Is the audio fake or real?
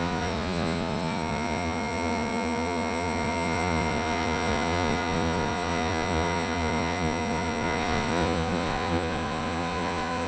fake